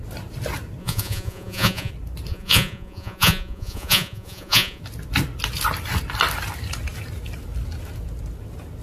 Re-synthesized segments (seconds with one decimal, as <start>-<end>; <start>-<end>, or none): 0.8-1.9; 2.3-4.8